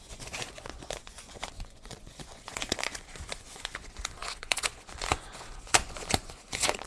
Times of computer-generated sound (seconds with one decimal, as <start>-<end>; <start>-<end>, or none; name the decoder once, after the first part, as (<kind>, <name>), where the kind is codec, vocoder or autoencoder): 0.0-6.9 (vocoder, Vocos)